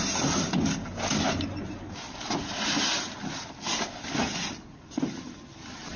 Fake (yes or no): no